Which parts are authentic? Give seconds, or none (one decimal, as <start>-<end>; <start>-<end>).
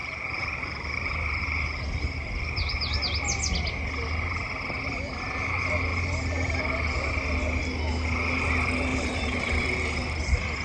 3.0-5.9; 6.6-8.9; 9.4-10.6